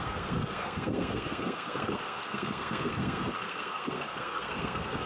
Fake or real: fake